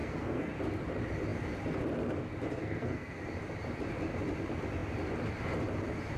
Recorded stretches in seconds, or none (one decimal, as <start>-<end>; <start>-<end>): 0.5-2.6; 3.2-6.2